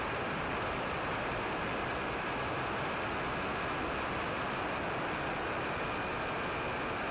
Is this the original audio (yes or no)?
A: yes